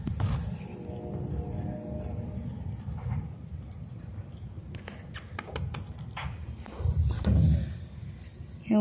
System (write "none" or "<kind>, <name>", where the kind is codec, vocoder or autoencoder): none